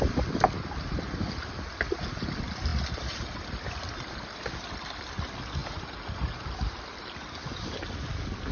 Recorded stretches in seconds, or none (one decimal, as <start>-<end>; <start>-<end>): 5.6-6.5